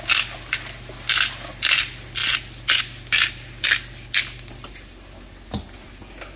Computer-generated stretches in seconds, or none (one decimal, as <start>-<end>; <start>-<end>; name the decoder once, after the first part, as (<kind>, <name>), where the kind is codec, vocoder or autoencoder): none